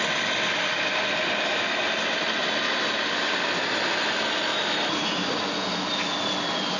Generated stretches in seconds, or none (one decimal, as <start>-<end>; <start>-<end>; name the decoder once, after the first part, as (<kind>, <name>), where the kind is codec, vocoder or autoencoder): none